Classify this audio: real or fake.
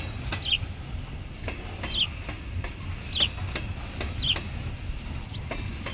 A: real